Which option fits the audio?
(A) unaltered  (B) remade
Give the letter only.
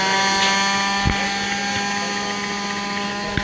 A